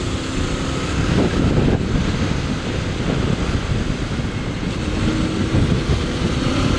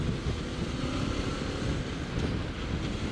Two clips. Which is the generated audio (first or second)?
first